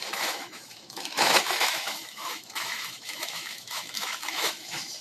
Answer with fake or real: fake